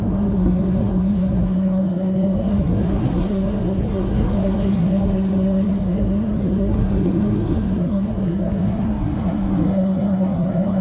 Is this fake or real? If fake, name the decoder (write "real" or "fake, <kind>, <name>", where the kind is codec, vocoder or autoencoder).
fake, codec, SNAC